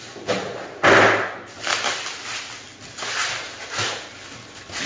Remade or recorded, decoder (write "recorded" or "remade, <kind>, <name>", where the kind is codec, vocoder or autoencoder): recorded